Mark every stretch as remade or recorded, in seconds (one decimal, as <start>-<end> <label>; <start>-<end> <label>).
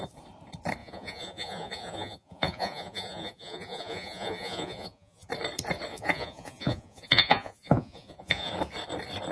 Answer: 0.0-0.8 recorded; 0.8-5.3 remade; 5.3-5.9 recorded; 5.9-8.5 remade; 8.5-9.3 recorded